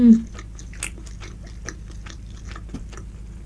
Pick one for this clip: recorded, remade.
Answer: recorded